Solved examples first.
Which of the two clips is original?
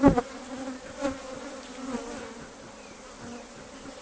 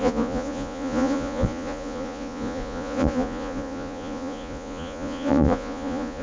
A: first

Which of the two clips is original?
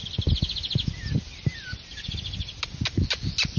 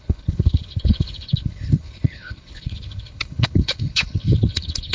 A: first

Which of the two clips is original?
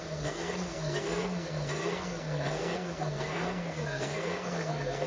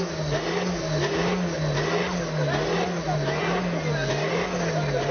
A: second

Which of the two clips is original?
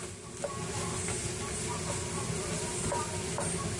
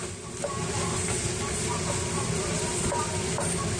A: first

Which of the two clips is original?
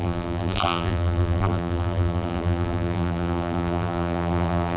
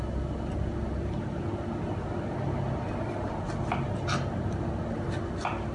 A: second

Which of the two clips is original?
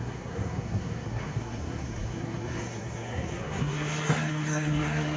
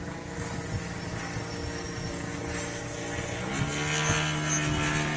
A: second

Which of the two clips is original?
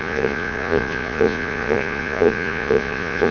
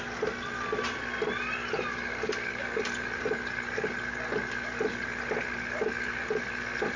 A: second